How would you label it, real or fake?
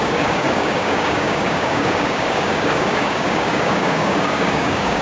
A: fake